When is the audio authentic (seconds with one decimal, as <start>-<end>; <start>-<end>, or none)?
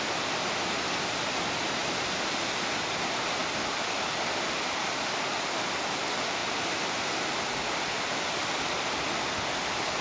0.0-6.4; 7.3-10.0